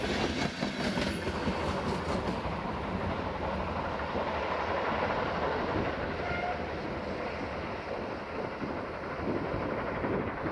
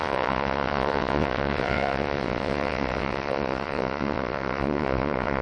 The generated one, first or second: second